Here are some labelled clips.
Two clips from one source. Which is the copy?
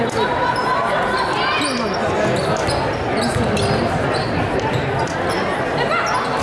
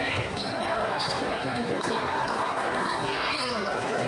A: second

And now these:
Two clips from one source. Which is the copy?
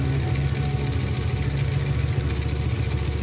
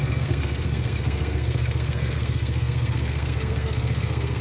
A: second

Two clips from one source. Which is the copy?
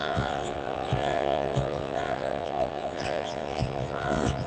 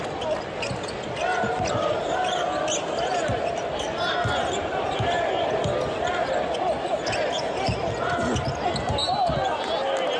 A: first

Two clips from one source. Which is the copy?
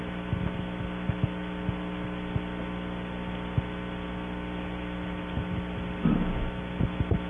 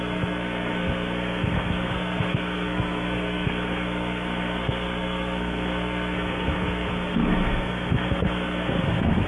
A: second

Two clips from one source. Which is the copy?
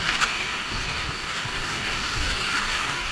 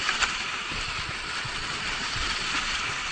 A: first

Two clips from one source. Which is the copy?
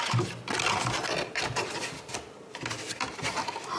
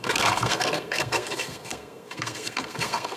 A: second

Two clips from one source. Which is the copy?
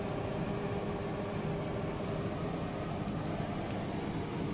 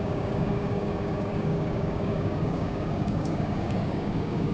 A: second